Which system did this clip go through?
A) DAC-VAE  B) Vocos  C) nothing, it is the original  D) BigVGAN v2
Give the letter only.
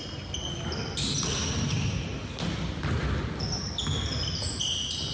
C